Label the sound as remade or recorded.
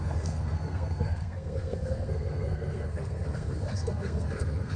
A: remade